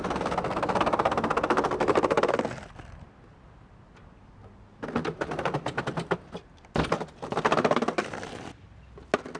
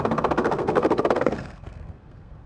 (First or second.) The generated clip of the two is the second